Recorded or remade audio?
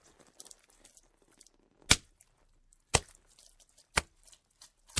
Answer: recorded